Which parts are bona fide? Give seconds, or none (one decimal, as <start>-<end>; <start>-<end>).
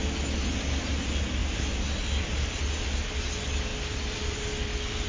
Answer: 0.0-5.1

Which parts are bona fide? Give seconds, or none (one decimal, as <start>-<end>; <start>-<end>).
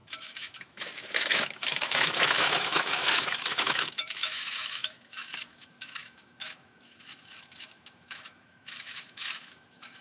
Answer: none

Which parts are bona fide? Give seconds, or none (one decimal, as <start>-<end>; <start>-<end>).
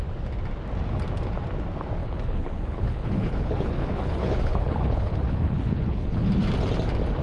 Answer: 0.0-2.0; 6.3-7.2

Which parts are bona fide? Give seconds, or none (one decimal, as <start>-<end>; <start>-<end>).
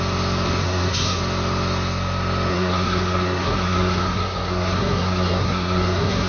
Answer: 0.0-0.6; 1.2-2.5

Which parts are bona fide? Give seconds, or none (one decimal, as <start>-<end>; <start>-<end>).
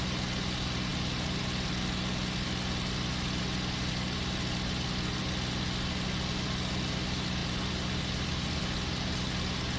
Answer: 0.0-7.4; 8.6-9.8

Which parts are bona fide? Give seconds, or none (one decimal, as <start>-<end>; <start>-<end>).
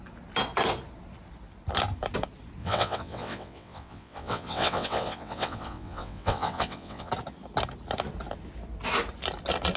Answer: 0.0-2.6; 7.1-9.8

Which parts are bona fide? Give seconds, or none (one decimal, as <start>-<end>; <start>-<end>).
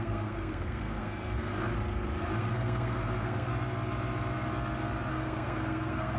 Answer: 1.5-2.4; 3.5-5.1